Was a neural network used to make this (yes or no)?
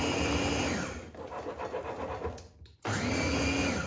no